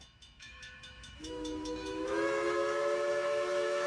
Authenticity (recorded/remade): remade